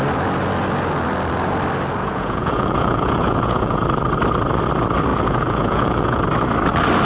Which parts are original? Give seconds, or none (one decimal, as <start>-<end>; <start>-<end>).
0.0-2.0; 3.8-5.1; 6.2-7.1